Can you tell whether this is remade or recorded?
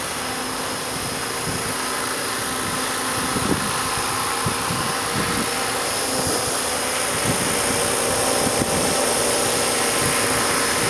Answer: recorded